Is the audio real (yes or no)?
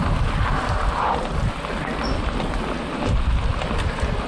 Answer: yes